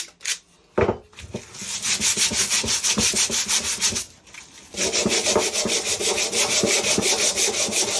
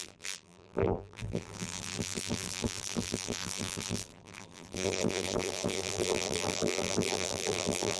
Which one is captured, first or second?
first